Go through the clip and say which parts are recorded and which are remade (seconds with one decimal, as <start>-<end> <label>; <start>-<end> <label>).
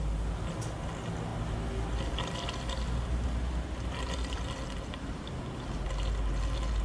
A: 0.0-6.8 recorded